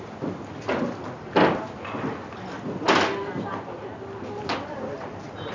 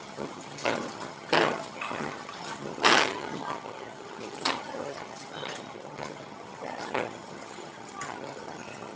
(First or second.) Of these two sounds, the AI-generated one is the second